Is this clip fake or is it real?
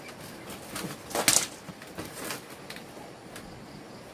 real